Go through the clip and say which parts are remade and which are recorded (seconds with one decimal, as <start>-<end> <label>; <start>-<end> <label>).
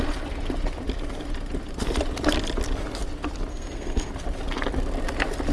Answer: 0.0-3.5 recorded; 3.5-4.1 remade; 4.1-5.5 recorded